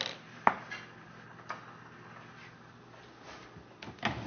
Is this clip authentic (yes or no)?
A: yes